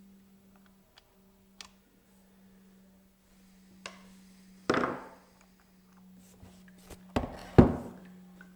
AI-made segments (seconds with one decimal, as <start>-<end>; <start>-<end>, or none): none